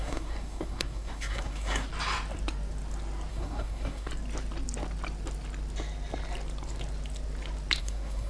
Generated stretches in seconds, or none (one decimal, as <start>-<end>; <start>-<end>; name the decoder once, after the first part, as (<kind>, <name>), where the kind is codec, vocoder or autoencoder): 0.0-1.9 (codec, SNAC); 3.3-4.1; 7.8-8.3